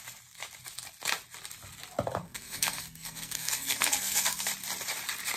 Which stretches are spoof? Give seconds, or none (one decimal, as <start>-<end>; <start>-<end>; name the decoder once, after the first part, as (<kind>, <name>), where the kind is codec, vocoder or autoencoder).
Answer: 2.2-4.5 (codec, SNAC)